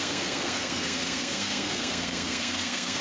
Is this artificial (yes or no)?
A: yes